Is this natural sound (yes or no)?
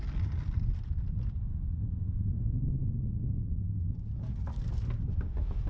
yes